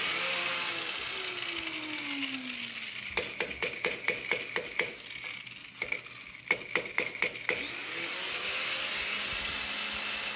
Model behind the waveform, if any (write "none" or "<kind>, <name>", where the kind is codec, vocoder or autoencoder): none